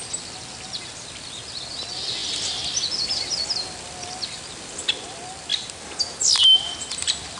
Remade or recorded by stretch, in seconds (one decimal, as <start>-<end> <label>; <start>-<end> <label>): 0.0-7.4 recorded